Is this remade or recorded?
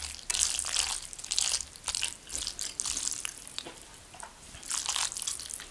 recorded